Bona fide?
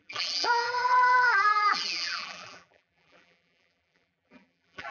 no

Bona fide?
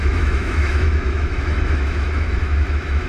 no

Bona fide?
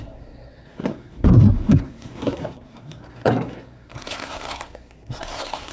no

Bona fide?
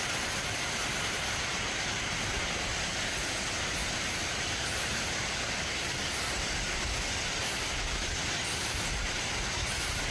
yes